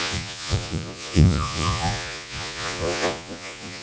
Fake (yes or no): yes